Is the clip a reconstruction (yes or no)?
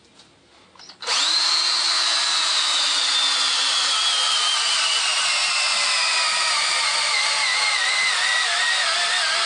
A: no